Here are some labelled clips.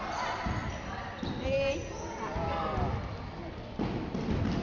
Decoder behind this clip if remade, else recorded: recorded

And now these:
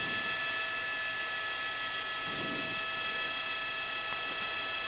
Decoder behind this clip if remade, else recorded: recorded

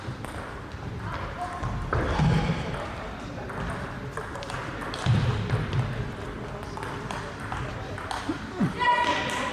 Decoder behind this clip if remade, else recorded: recorded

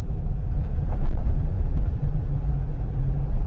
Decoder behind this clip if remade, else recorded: remade, vocoder, BigVGAN v2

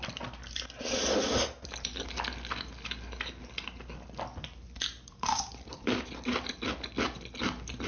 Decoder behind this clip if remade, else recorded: recorded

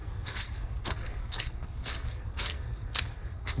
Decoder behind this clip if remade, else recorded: remade, codec, SNAC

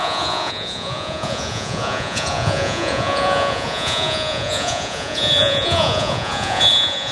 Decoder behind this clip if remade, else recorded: remade, vocoder, Vocos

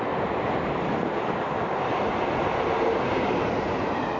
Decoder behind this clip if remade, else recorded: recorded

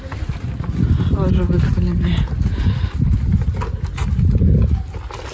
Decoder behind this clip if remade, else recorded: recorded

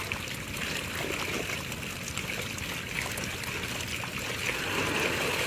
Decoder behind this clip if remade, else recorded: recorded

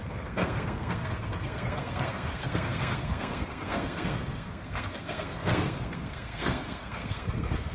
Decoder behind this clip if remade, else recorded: remade, codec, SNAC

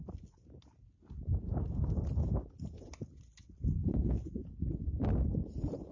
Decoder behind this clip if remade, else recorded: recorded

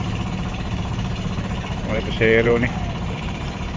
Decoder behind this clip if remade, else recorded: remade, vocoder, BigVGAN v2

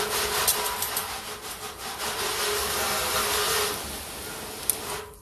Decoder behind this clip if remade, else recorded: recorded